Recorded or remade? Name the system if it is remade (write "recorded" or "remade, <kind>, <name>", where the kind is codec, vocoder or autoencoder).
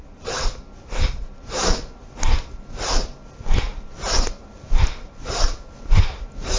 recorded